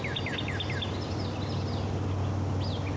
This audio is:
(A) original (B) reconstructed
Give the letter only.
A